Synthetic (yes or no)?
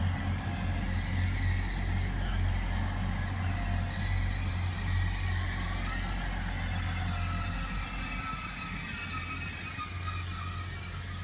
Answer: no